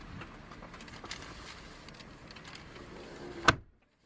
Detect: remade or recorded recorded